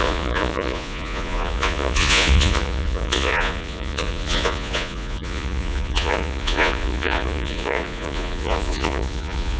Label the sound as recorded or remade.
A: remade